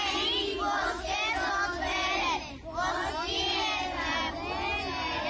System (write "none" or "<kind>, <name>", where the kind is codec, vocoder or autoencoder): none